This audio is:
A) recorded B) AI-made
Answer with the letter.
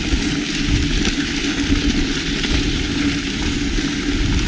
A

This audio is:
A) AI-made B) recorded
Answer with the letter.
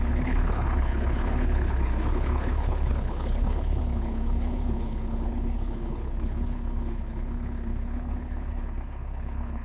A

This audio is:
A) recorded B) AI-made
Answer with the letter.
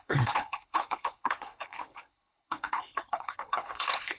B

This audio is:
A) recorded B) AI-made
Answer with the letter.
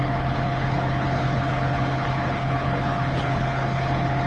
B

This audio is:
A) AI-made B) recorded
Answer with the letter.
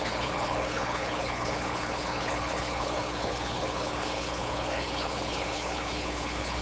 A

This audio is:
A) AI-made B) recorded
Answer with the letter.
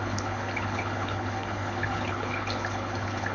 A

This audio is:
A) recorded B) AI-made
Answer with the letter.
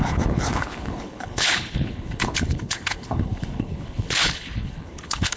B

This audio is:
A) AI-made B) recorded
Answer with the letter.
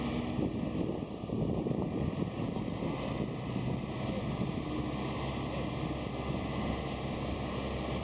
B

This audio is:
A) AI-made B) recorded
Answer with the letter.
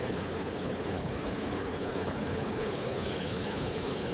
A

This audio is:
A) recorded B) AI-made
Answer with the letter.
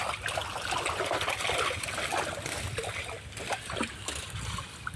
A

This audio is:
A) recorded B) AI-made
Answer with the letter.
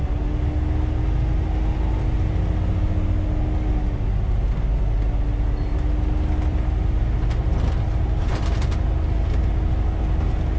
A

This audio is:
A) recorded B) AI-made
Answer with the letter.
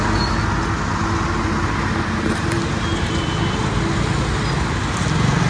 A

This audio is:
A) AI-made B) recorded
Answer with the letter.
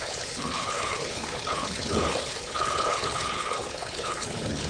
A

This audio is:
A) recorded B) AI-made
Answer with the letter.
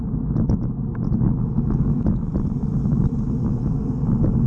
A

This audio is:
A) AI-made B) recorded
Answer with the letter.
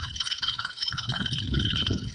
A